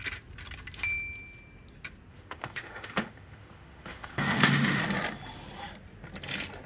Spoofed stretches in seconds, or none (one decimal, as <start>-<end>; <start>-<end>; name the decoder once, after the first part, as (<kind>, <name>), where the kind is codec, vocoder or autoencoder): 2.1-4.8 (autoencoder, DAC-VAE)